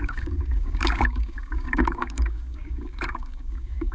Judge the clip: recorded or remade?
remade